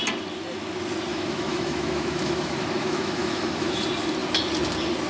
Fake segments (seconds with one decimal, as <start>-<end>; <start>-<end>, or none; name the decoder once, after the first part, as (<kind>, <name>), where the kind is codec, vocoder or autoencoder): 1.1-3.8 (autoencoder, DAC-VAE)